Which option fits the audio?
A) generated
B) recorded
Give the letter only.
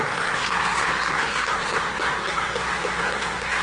A